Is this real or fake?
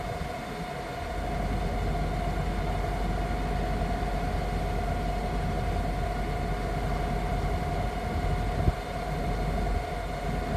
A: real